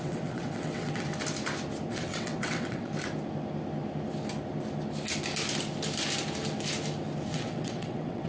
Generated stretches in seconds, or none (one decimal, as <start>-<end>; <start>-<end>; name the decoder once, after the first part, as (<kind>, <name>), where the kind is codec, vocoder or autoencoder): 0.0-1.1 (vocoder, WaveNeXt); 1.9-2.9; 7.3-8.3